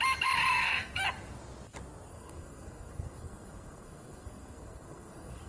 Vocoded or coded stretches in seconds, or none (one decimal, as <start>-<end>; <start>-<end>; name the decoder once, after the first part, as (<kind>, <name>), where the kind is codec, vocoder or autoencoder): 0.5-1.0 (codec, SNAC); 2.1-5.5